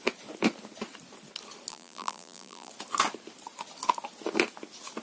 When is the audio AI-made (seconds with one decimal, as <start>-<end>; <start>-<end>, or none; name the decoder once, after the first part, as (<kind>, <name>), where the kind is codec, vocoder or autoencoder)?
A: 1.7-2.7 (vocoder, BigVGAN v2)